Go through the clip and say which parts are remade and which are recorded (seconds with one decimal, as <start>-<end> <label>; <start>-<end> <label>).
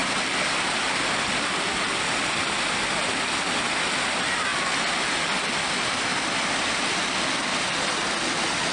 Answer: 0.0-2.3 remade; 2.3-4.5 recorded; 4.5-5.6 remade; 5.6-6.1 recorded; 6.1-6.8 remade; 6.8-8.7 recorded